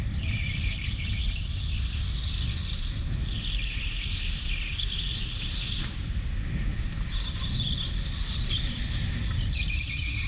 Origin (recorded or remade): recorded